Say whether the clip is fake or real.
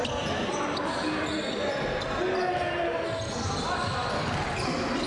real